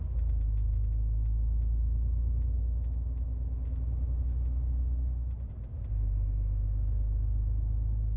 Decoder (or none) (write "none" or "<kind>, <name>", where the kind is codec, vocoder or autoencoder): none